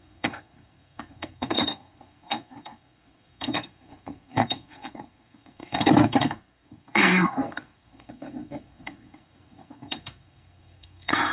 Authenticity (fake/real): fake